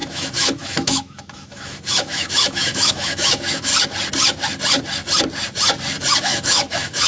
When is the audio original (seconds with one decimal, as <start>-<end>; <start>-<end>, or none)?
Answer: 3.7-6.2